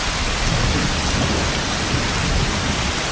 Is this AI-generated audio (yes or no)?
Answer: no